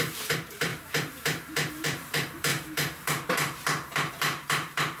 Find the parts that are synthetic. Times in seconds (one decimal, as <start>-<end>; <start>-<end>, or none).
0.0-5.0